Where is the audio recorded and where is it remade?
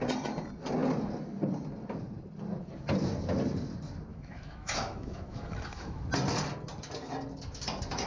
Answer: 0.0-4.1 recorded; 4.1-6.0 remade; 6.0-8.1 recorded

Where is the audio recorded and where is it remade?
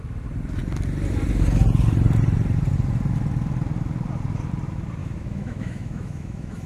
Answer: 0.0-5.0 recorded; 5.0-6.7 remade